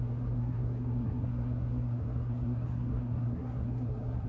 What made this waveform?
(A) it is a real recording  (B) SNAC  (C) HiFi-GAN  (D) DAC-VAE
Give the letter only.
B